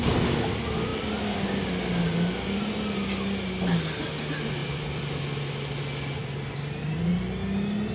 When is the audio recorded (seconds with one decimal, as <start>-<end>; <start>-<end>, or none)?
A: 0.0-4.6; 5.8-6.2; 7.1-7.9